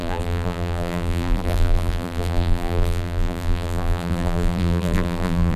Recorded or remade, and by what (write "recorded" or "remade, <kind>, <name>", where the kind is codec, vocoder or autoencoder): remade, vocoder, BigVGAN v2